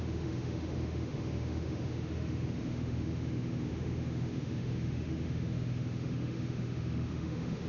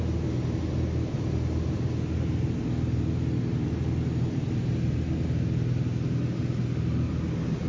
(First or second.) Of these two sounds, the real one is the second